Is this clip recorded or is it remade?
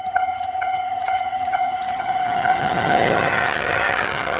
remade